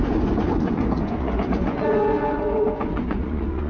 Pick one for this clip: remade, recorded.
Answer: remade